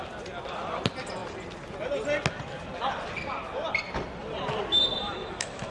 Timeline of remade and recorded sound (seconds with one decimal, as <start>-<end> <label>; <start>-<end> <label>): 0.0-5.0 recorded; 5.0-5.7 remade